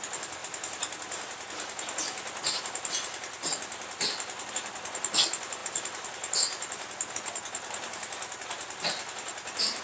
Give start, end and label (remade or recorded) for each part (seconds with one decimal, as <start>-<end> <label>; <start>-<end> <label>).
0.0-9.8 recorded